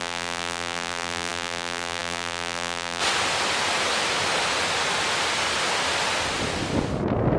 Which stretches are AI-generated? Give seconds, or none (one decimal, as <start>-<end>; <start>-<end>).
0.0-3.0